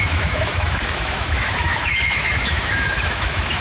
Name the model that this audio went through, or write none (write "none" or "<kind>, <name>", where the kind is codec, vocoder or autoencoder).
autoencoder, DAC-VAE